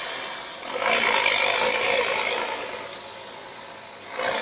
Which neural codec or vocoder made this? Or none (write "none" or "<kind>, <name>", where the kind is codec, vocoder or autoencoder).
none